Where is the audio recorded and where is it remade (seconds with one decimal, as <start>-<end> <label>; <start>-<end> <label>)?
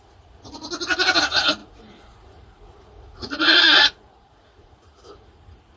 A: 0.0-0.6 remade; 0.6-1.2 recorded; 1.2-5.8 remade